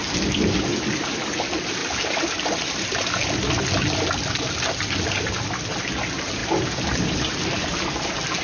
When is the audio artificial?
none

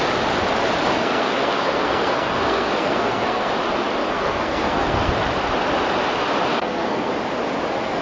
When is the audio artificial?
0.9-3.5 (codec, SNAC); 4.0-5.1; 6.5-7.1

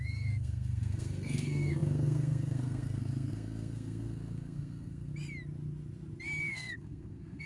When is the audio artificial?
0.0-5.1 (codec, SNAC); 6.4-7.5

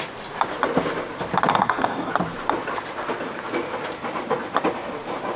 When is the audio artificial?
1.5-2.1 (codec, DAC)

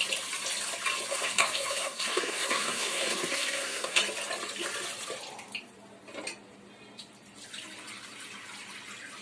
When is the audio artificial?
1.1-4.0 (codec, SNAC)

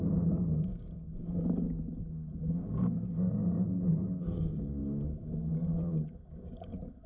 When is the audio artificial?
0.0-3.4 (codec, DAC); 3.9-7.1

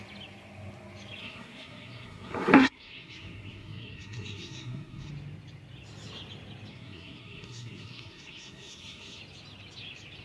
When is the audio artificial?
1.2-5.1 (codec, SNAC); 6.7-9.2